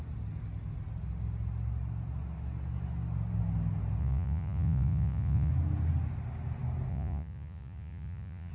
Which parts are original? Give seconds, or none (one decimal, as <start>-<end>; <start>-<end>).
0.0-4.0; 5.5-6.9